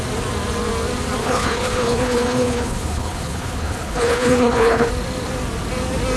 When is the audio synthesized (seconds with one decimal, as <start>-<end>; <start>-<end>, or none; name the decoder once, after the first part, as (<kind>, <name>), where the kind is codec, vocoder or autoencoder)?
1.2-4.9 (codec, HILCodec)